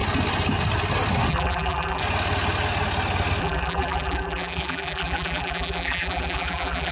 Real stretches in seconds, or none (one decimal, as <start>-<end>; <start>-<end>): 0.0-1.3; 2.0-3.4